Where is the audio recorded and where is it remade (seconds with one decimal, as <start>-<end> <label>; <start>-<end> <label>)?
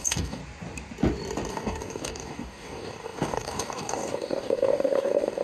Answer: 0.0-0.4 remade; 0.4-1.5 recorded; 1.5-5.4 remade